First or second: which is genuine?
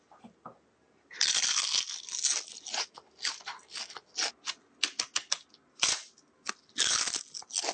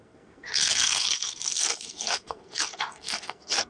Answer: first